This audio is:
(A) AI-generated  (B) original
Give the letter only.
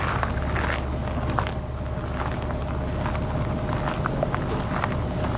B